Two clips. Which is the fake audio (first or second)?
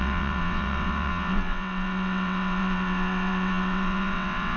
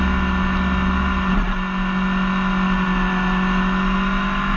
first